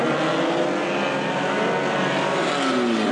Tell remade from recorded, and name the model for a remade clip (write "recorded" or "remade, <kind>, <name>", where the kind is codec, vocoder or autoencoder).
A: recorded